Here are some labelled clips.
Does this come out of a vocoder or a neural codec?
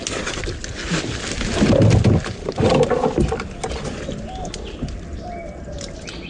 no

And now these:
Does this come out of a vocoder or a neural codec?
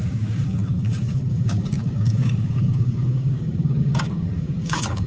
yes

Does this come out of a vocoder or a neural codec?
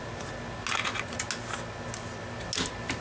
no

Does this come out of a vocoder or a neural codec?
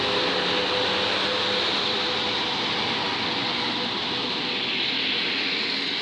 no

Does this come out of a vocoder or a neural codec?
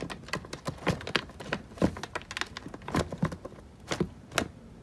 no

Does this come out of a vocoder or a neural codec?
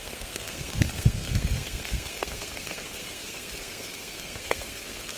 yes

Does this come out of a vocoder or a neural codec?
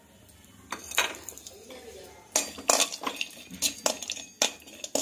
no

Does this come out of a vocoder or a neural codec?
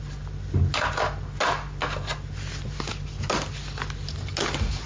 no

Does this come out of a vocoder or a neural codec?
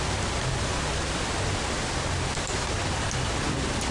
no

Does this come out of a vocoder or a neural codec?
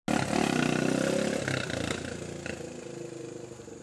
no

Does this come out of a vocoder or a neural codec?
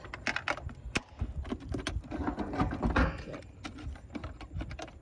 no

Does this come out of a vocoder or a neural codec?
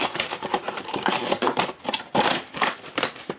yes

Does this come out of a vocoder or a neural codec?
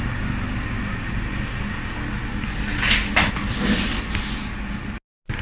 no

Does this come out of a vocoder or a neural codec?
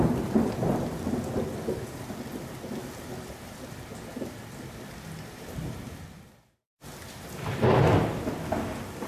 no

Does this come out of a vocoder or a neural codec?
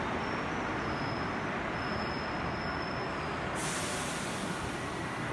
no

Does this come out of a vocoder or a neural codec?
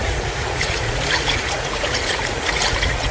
yes